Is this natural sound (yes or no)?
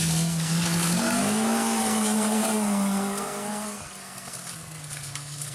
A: no